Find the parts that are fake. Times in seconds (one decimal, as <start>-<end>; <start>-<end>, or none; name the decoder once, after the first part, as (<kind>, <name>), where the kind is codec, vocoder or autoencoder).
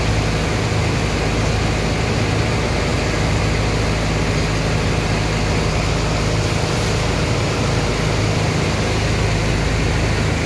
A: none